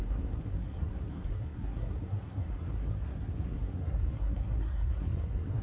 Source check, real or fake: fake